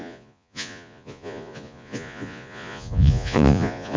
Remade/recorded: remade